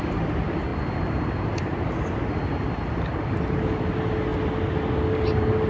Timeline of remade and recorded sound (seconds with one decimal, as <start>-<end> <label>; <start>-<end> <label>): 0.0-5.7 recorded